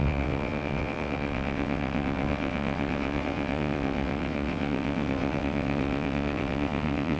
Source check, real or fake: fake